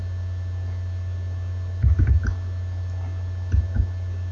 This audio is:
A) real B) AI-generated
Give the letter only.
A